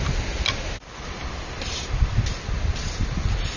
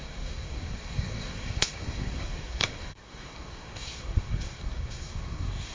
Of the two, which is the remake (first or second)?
second